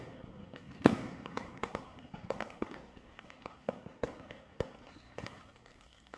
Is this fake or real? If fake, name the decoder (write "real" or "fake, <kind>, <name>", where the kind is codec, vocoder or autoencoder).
fake, codec, SNAC